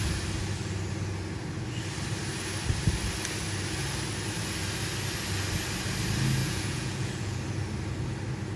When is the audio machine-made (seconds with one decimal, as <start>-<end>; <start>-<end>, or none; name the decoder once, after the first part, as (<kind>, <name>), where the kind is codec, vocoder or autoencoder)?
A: 6.4-7.4 (vocoder, Vocos)